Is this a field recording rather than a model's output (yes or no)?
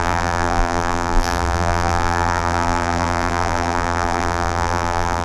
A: no